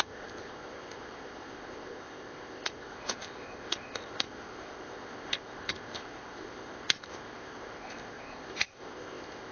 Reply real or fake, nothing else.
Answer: fake